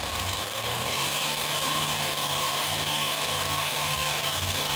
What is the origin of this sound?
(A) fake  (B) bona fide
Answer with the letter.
A